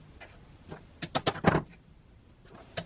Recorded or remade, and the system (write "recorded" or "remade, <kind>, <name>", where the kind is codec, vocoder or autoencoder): recorded